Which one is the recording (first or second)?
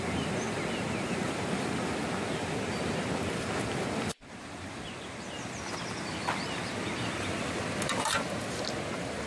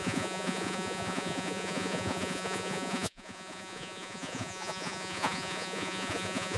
first